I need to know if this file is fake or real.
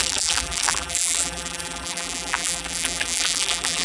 fake